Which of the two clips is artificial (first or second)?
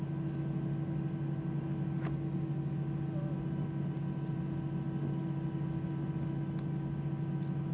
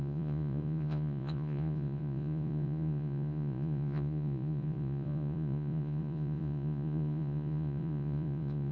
second